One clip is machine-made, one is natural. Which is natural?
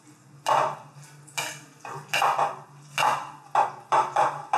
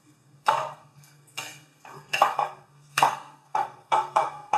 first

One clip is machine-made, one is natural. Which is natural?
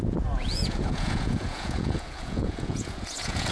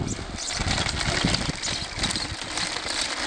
second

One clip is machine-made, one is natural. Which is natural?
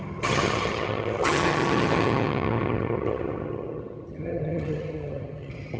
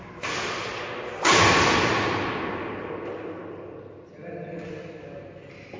second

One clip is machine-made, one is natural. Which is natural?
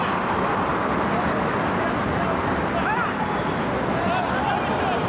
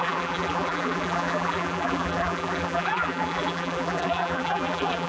first